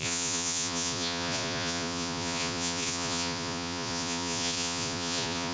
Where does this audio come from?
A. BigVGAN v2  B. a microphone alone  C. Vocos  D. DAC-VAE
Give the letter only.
C